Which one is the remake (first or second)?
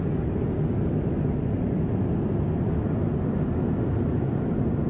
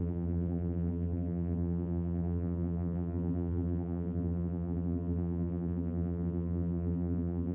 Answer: second